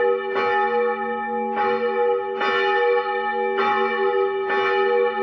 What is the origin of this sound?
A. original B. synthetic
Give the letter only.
A